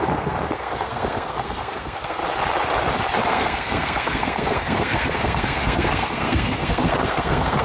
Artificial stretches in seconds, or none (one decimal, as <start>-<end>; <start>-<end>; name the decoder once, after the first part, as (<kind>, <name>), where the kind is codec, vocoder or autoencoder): 0.0-2.2 (codec, SNAC); 3.3-7.6